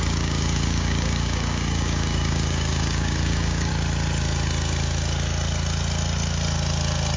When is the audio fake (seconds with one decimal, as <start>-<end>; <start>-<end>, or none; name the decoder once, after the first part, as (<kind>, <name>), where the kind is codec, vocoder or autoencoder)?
0.0-3.7 (codec, DAC)